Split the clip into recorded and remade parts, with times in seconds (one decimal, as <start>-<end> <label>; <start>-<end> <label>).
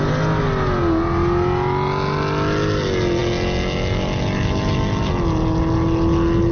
0.0-6.5 recorded